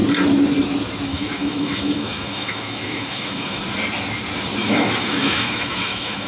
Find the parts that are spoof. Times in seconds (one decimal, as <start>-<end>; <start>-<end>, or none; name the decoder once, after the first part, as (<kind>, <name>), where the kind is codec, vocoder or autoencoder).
1.1-3.6 (autoencoder, DAC-VAE); 4.6-6.3